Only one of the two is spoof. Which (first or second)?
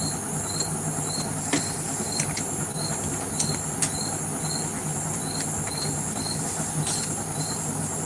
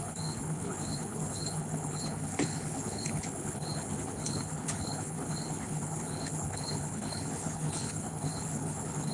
second